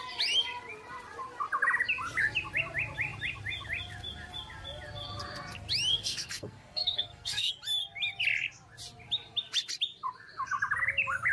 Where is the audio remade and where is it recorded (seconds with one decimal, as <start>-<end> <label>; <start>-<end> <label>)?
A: 0.0-5.9 recorded; 5.9-7.5 remade; 7.5-11.3 recorded